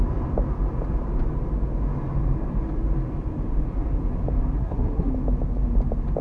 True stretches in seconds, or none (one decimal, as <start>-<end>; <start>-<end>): 0.0-4.6; 5.1-6.2